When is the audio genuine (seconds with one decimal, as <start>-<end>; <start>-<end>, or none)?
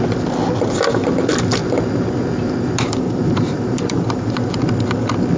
0.0-1.6; 4.6-5.4